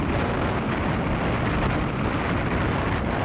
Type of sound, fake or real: real